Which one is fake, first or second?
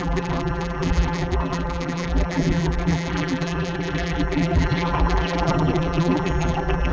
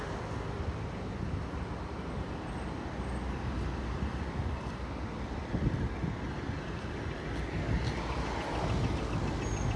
first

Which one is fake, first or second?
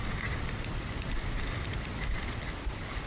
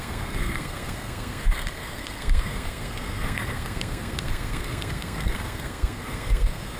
second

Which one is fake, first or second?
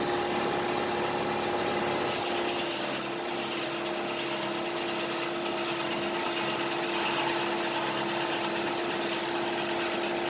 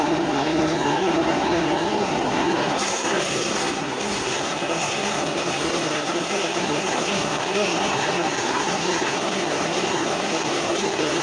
second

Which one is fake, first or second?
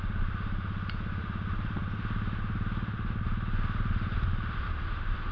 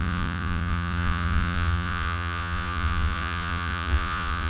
second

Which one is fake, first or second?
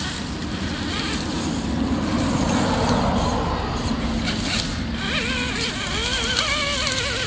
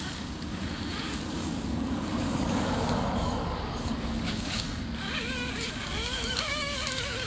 second